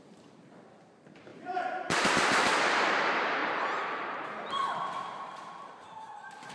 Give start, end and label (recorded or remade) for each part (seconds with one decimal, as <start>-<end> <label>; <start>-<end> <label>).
0.0-3.4 remade; 3.4-3.9 recorded; 3.9-6.5 remade